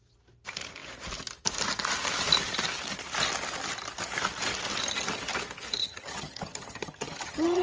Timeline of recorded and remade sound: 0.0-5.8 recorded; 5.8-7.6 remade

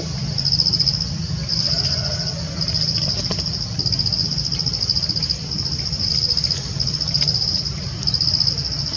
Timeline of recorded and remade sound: 0.0-9.0 recorded